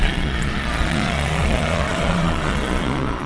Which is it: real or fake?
fake